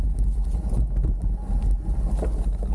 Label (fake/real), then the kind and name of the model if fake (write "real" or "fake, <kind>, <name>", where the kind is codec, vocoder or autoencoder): real